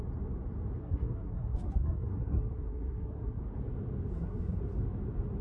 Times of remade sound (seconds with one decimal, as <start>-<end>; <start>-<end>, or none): 0.8-3.4; 4.1-4.6